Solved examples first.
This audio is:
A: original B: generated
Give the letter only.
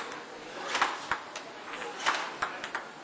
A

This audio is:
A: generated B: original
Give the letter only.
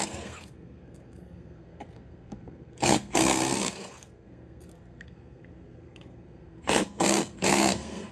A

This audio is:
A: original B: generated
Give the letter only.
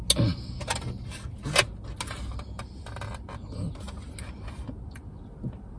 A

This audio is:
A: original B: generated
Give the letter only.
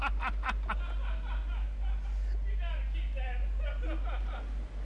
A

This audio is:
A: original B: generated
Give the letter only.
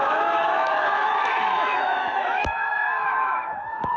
B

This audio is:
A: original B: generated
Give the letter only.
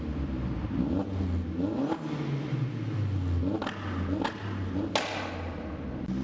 A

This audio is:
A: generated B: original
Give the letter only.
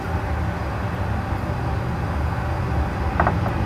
B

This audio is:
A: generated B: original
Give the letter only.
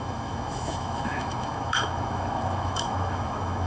A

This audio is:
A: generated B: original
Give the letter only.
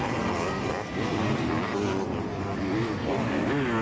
B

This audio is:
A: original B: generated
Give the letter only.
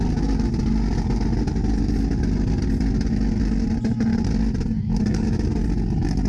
A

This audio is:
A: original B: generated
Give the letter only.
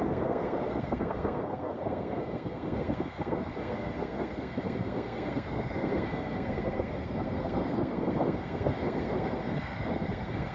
B